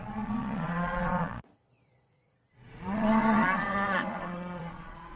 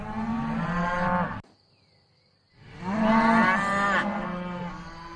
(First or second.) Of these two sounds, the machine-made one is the first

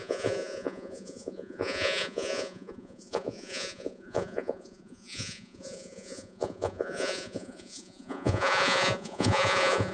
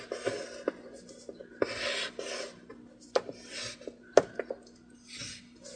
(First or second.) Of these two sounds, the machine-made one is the first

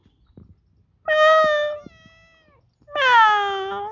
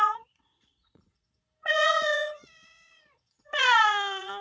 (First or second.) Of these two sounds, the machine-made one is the second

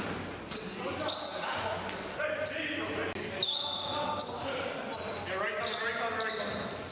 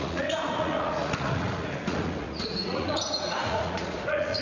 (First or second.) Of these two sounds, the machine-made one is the second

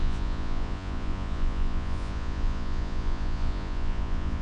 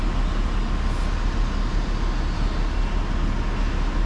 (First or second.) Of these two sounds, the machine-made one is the first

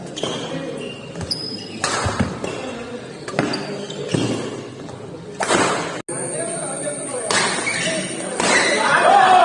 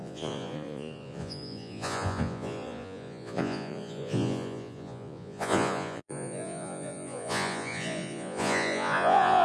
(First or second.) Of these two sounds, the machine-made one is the second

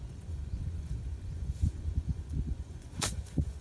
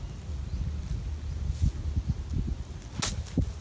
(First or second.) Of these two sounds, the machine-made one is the first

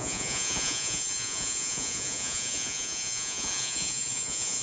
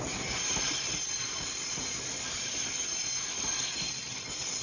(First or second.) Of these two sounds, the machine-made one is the first